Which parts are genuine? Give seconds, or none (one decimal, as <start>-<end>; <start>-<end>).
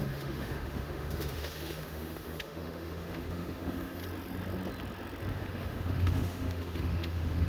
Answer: 4.0-5.3